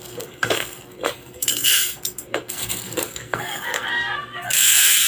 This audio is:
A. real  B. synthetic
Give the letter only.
B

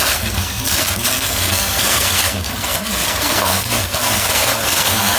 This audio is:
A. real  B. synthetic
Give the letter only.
B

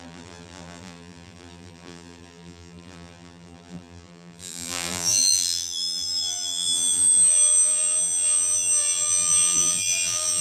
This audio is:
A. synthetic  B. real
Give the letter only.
A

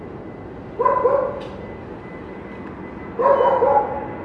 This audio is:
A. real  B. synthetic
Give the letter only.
A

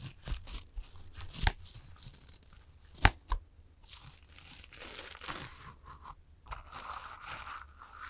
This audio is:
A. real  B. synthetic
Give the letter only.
A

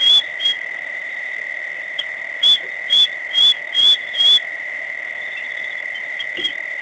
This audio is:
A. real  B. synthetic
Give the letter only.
A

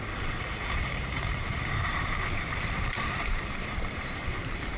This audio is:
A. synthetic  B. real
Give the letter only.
A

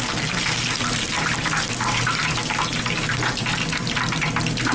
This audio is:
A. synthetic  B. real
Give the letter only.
B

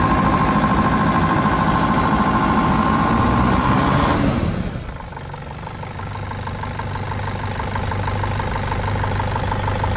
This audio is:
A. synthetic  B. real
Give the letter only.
B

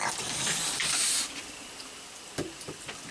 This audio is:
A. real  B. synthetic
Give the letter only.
A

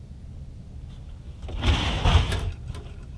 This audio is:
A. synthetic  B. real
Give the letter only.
B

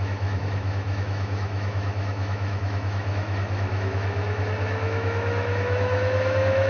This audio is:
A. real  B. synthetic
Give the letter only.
B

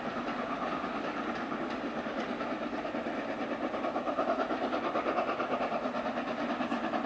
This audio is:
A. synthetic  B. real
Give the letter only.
B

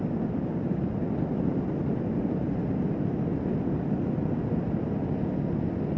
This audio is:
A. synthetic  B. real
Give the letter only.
B